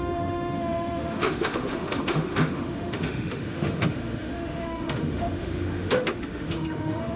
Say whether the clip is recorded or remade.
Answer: remade